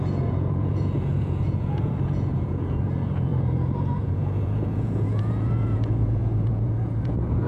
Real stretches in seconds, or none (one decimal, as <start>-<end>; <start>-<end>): none